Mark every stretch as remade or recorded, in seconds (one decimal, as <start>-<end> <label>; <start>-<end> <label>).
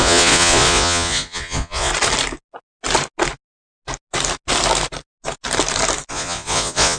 0.0-1.9 remade; 1.9-6.1 recorded; 6.1-7.0 remade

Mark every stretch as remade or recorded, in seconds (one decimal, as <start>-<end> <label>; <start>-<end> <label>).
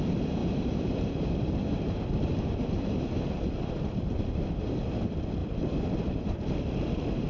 0.0-0.4 recorded; 0.4-4.8 remade; 4.8-5.4 recorded; 5.4-6.4 remade; 6.4-7.3 recorded